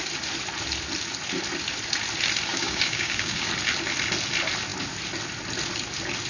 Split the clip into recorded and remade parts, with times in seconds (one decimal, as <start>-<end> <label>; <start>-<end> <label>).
0.0-2.5 recorded; 2.5-3.5 remade; 3.5-6.3 recorded